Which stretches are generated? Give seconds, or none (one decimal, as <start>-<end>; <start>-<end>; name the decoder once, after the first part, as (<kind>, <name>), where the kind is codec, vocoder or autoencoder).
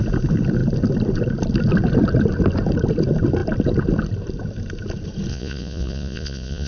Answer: 5.3-6.7 (vocoder, Vocos)